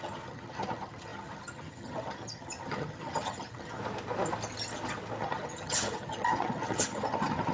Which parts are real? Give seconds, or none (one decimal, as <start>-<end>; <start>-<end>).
3.8-5.2

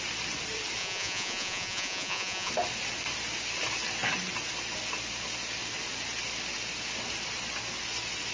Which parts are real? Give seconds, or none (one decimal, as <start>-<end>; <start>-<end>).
0.0-0.8; 2.5-8.3

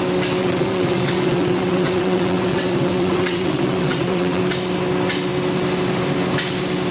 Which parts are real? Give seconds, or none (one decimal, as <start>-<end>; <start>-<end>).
0.0-0.4; 4.4-6.9